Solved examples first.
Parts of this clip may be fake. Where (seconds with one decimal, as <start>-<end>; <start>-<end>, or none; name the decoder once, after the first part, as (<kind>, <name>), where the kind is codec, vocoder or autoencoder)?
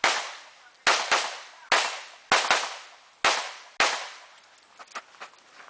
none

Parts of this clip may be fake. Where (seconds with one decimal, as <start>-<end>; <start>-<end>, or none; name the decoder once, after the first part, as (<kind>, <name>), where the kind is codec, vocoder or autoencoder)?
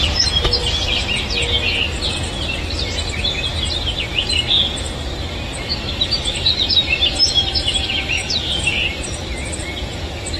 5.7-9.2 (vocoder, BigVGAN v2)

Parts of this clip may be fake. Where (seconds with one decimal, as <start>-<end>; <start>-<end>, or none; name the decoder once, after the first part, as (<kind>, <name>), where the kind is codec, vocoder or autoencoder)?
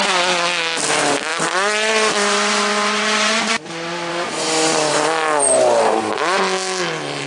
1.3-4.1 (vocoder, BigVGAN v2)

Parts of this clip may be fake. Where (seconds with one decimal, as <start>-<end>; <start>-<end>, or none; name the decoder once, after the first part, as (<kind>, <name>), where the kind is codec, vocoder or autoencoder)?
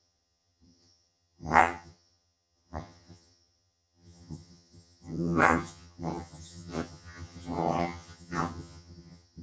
0.0-9.4 (vocoder, HiFi-GAN)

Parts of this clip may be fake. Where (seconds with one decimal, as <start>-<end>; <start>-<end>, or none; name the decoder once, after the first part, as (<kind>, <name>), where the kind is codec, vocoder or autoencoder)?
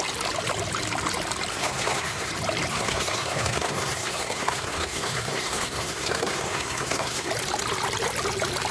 1.5-2.3 (codec, SNAC); 2.7-7.3